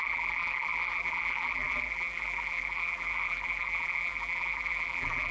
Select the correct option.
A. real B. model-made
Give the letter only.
B